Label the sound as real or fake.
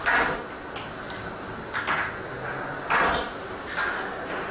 real